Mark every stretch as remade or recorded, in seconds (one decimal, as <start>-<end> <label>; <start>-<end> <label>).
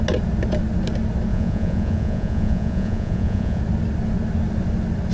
0.0-1.3 recorded; 1.3-3.6 remade; 3.6-5.1 recorded